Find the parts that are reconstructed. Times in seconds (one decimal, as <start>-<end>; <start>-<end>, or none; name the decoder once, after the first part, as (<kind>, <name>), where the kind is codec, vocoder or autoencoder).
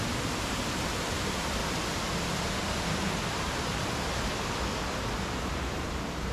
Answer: 0.0-1.6 (vocoder, BigVGAN v2); 5.4-6.3